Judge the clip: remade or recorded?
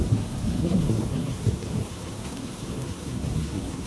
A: remade